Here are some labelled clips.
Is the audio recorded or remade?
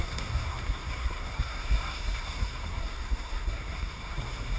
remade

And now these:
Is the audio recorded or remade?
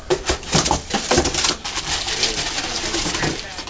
recorded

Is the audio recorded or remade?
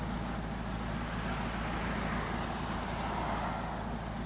recorded